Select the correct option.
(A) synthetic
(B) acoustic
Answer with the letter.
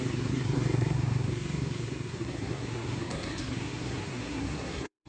A